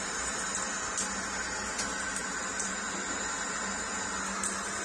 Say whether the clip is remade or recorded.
recorded